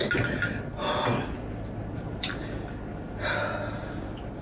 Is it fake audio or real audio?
real